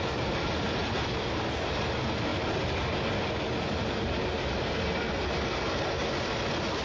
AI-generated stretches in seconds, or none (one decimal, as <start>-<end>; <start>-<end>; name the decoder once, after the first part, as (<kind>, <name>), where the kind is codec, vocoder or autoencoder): none